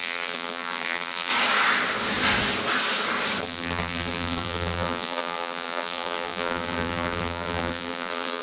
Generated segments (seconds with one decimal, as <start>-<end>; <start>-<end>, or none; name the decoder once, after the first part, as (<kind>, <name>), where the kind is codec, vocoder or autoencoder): 0.0-1.3 (vocoder, BigVGAN v2); 3.4-8.4

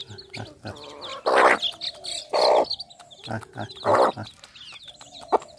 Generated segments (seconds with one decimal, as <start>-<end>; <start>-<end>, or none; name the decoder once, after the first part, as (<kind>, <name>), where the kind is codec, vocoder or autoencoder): 3.9-5.6 (vocoder, BigVGAN v2)

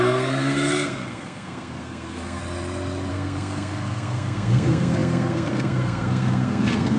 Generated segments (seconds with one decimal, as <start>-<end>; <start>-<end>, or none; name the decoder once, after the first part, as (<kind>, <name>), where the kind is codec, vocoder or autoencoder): 0.0-2.4 (codec, SNAC); 3.1-7.0

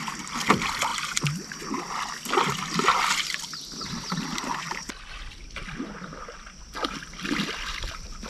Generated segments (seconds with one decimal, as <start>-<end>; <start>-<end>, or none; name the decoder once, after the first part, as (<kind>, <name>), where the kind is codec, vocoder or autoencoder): none

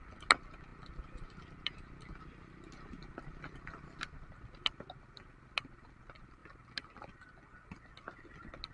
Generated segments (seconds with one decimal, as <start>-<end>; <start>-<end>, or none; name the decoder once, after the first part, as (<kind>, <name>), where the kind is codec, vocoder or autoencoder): 0.0-0.7 (vocoder, BigVGAN v2); 1.5-6.4; 7.0-8.7

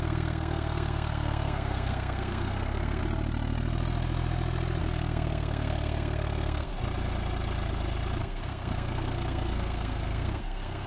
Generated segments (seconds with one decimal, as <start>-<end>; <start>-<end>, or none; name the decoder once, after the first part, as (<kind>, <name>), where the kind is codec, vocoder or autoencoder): 0.0-3.0 (codec, SNAC); 4.8-6.7; 8.2-10.9